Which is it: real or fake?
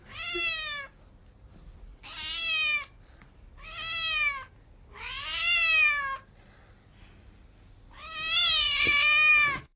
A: real